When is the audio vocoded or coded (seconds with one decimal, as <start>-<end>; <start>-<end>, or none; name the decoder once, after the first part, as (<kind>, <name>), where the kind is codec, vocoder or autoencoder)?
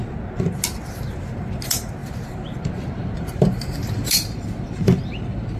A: 2.0-5.6 (vocoder, BigVGAN v2)